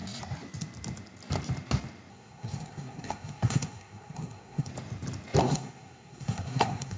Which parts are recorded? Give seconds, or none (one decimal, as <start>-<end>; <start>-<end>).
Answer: 0.0-2.1; 4.7-5.4